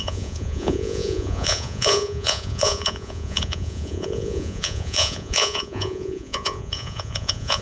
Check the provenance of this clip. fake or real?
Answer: fake